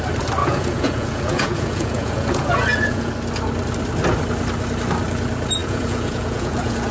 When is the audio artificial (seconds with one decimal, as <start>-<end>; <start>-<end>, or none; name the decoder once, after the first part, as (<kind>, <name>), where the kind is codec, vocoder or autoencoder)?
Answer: 0.4-3.1 (vocoder, Vocos); 5.6-6.9